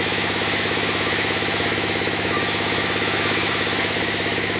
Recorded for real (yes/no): no